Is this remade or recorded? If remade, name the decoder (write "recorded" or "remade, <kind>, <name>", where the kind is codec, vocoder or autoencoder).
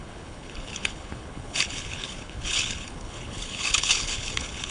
remade, codec, HILCodec